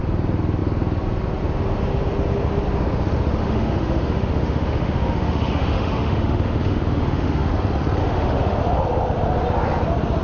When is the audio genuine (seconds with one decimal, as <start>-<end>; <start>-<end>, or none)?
0.0-3.4; 7.5-8.0; 8.6-10.2